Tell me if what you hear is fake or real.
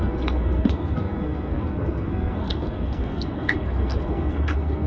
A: fake